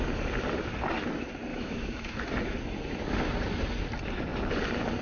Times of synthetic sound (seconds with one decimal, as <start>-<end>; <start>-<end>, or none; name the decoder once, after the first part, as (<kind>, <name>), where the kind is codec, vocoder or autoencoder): 1.5-2.2 (autoencoder, DAC-VAE)